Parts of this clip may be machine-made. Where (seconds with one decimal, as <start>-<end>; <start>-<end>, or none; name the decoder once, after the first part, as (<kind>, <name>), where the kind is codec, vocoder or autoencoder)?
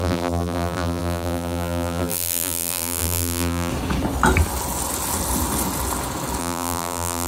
0.0-3.7 (vocoder, BigVGAN v2); 6.4-7.3